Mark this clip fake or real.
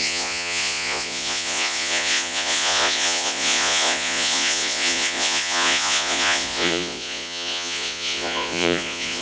fake